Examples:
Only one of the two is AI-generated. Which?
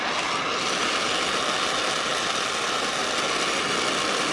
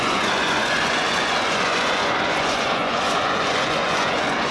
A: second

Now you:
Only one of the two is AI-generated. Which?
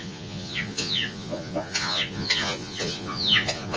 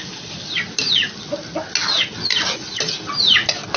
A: first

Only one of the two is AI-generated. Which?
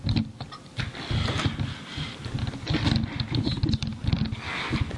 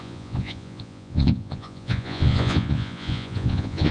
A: second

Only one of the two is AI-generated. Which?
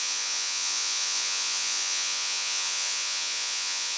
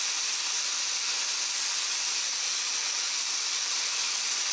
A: first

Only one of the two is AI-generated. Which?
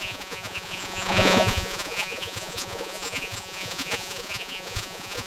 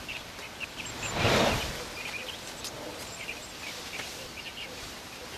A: first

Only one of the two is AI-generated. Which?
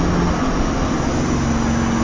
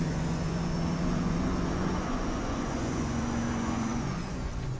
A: second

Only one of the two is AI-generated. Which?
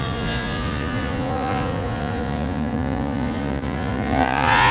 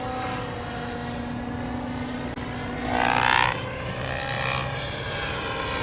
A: first